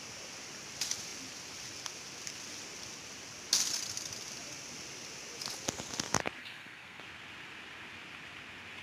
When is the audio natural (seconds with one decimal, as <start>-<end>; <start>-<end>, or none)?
0.0-6.4; 7.0-8.8